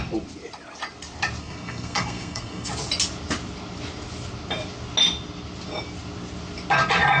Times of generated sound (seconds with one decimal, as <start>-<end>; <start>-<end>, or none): 1.4-2.7